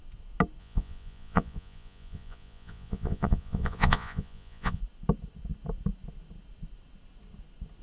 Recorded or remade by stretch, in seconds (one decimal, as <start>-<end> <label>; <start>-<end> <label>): 0.0-0.6 recorded; 0.6-4.8 remade; 4.8-7.8 recorded